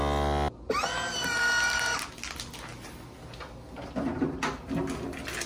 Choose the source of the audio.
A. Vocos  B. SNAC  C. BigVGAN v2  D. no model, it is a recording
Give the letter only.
D